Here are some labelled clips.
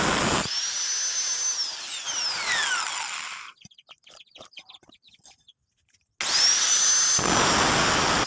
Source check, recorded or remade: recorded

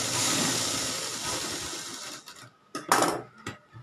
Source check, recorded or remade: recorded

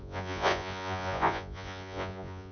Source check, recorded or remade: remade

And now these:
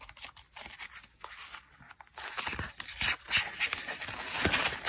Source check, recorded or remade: recorded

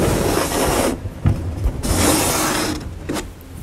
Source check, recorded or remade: recorded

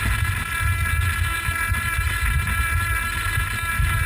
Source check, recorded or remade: recorded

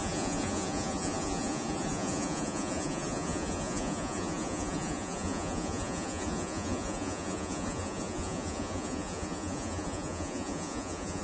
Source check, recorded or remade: remade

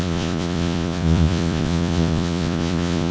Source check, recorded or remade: remade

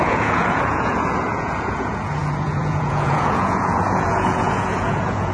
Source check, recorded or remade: remade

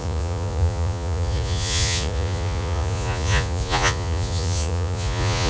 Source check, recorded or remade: remade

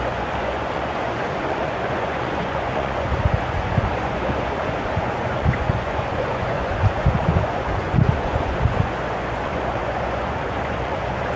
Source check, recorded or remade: remade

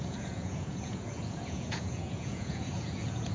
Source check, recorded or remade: remade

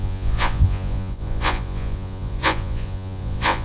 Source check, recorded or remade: remade